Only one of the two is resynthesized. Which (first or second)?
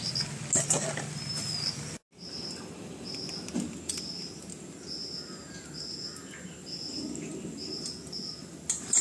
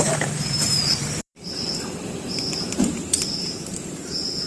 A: second